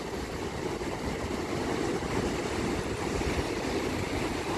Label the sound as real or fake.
real